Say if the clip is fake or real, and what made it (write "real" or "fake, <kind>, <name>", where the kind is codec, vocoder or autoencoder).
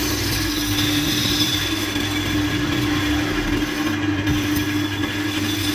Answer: real